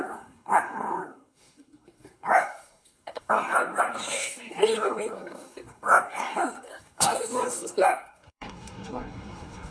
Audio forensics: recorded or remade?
remade